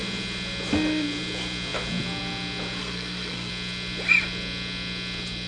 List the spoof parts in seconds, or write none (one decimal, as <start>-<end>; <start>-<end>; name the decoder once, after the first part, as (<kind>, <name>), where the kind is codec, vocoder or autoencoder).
2.8-3.5 (codec, SNAC)